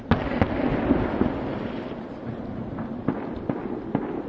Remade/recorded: recorded